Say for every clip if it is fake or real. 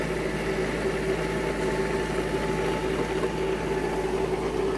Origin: real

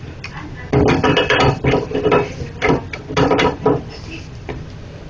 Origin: real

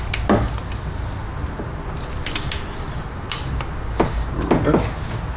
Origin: real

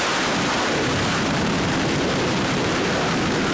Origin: fake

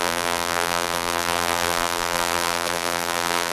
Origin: fake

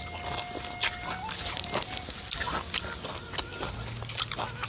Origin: real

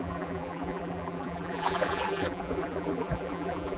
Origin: fake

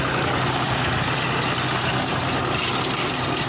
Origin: real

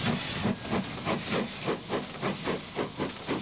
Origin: real